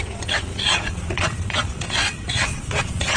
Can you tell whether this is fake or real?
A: fake